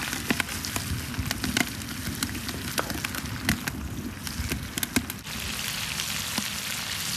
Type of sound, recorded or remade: recorded